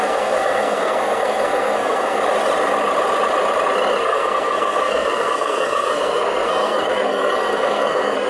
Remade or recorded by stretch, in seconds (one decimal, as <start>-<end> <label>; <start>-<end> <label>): 0.0-2.2 remade; 2.2-4.0 recorded; 4.0-8.3 remade